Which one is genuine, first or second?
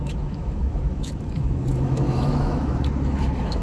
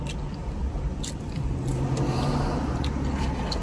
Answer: second